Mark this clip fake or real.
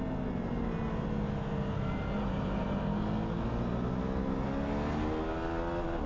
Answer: real